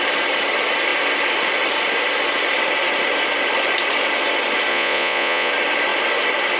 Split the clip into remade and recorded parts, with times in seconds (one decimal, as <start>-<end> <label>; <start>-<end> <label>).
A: 0.0-4.7 recorded; 4.7-5.5 remade; 5.5-6.6 recorded